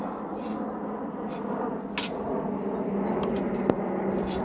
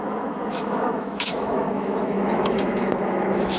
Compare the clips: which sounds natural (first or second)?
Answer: first